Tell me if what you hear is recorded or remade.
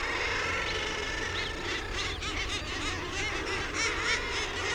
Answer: recorded